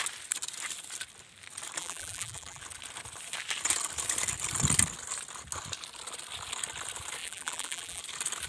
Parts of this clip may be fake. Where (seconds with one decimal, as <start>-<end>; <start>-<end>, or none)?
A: 1.8-2.6; 7.2-8.0